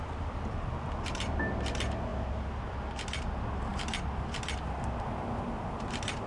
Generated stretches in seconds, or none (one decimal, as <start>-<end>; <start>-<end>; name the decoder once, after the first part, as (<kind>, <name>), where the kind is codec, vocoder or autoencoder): none